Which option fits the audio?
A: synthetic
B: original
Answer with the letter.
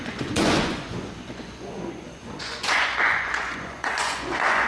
A